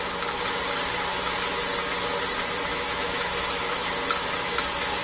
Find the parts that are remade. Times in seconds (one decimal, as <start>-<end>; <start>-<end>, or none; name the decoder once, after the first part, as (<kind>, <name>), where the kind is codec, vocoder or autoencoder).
2.7-3.9 (autoencoder, DAC-VAE)